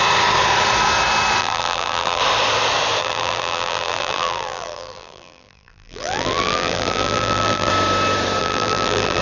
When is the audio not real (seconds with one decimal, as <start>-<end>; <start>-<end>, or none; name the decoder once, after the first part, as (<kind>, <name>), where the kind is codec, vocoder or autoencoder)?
1.4-2.2 (vocoder, BigVGAN v2); 3.0-7.7; 8.4-9.2